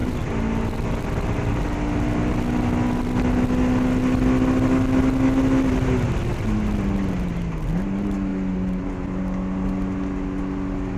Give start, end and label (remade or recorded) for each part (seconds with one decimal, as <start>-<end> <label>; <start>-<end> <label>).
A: 0.0-11.0 recorded